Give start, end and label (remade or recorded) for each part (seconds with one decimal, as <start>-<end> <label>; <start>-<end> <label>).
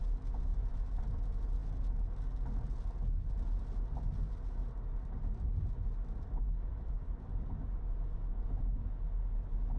0.0-9.8 recorded